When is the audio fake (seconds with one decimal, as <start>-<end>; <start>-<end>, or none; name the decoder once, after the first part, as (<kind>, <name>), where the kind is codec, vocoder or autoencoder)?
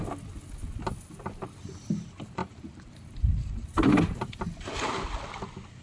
2.4-4.4 (vocoder, BigVGAN v2)